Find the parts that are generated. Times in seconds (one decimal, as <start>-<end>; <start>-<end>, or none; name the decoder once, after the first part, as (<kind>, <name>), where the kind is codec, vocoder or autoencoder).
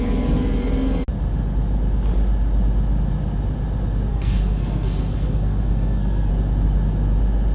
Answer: 4.1-6.3 (codec, SNAC)